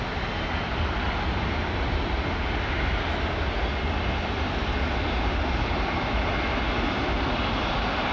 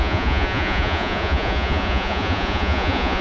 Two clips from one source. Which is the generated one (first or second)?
second